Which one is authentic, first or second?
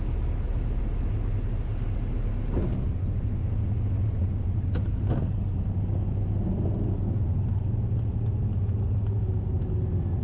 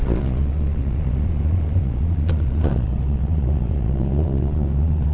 first